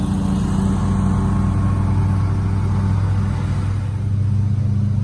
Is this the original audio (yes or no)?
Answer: yes